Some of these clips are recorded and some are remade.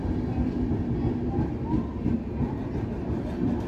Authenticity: recorded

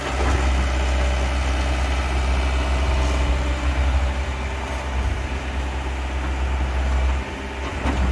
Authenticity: recorded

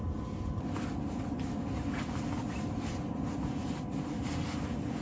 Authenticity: recorded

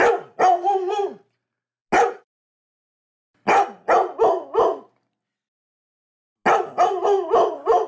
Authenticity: recorded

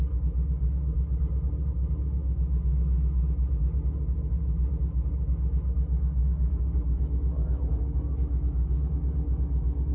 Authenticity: recorded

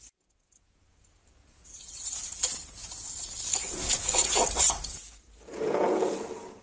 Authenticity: remade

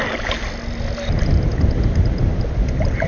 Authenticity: recorded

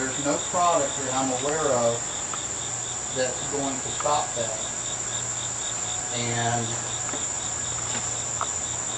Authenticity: recorded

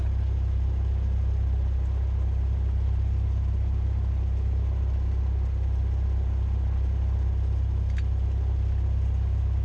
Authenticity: recorded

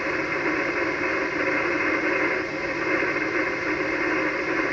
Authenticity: recorded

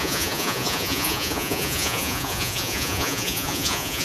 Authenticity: remade